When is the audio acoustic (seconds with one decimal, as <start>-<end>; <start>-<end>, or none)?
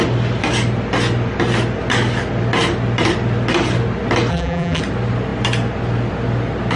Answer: 0.0-4.3; 4.8-6.8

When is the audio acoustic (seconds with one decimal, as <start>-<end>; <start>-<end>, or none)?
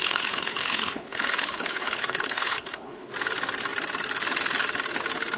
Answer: 3.1-5.4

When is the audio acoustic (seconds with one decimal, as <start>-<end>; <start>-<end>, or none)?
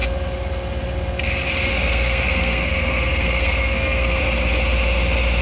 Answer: 0.0-1.7; 4.2-5.4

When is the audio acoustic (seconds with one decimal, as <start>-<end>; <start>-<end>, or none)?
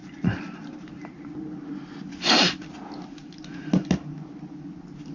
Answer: 0.0-5.1